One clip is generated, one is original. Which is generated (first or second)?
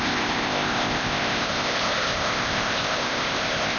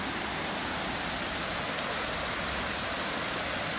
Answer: first